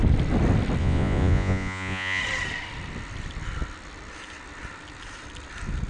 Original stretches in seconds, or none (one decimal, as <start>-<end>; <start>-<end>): 0.0-0.8; 2.2-5.9